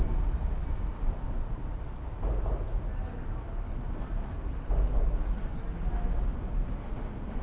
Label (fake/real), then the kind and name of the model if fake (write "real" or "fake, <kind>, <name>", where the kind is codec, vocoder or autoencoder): real